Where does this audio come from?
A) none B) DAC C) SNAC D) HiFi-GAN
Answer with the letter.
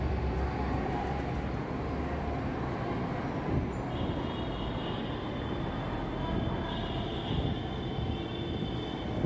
A